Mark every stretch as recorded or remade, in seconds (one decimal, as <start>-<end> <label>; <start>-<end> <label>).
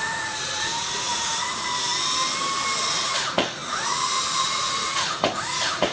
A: 0.0-1.9 remade; 1.9-2.8 recorded; 2.8-5.9 remade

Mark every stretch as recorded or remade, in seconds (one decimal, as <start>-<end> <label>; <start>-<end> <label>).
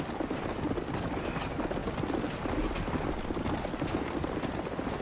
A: 0.0-5.0 recorded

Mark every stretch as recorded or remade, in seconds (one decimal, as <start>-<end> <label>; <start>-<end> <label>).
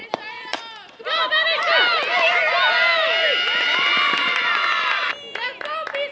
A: 0.0-0.6 remade; 0.6-6.1 recorded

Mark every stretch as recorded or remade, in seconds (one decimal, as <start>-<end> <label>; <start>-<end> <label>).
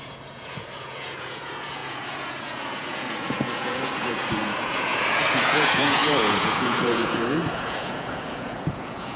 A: 0.0-9.2 remade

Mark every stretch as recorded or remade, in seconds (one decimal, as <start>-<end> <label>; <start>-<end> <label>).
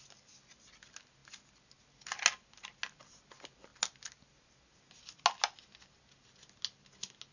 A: 0.0-7.3 recorded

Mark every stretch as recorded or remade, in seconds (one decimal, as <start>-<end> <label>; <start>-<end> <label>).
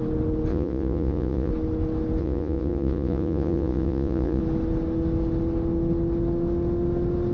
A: 0.0-0.5 recorded; 0.5-1.5 remade; 1.5-2.2 recorded; 2.2-4.4 remade; 4.4-7.3 recorded